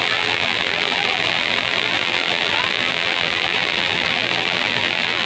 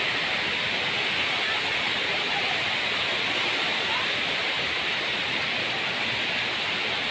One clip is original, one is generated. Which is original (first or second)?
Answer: second